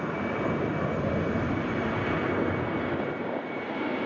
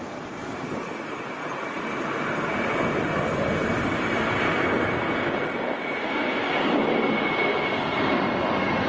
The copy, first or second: second